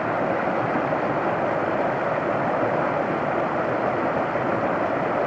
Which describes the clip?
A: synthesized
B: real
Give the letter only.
B